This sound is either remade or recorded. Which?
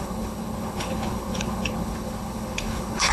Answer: remade